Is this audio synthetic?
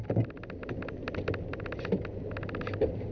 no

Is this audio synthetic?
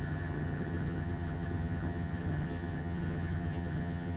yes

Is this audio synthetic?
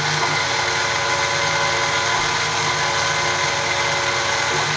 no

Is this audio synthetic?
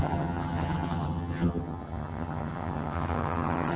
yes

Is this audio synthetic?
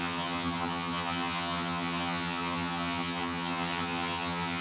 yes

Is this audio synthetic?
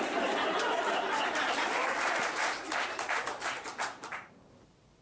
no